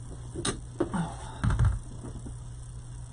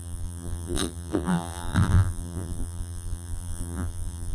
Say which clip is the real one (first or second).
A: first